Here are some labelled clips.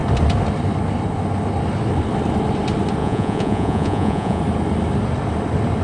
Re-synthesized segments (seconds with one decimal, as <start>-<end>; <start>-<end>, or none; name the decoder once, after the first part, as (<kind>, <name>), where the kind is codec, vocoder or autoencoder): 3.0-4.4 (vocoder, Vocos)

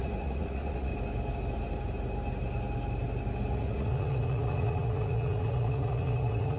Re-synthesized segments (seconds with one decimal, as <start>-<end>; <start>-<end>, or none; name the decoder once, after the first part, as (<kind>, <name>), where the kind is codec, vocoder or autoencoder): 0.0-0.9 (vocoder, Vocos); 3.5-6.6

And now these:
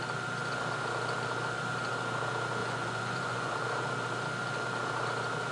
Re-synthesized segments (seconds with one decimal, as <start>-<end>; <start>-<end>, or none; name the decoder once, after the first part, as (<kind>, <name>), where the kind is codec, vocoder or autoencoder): 2.6-3.5 (vocoder, Vocos)